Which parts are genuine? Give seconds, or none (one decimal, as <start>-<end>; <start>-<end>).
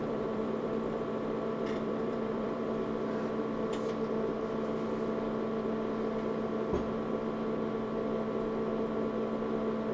2.6-9.9